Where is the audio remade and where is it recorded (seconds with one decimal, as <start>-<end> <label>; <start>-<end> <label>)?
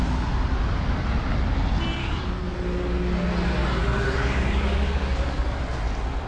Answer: 0.0-2.0 recorded; 2.0-2.5 remade; 2.5-3.8 recorded; 3.8-5.6 remade; 5.6-6.3 recorded